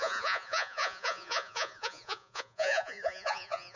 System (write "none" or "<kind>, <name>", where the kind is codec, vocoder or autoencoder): vocoder, Vocos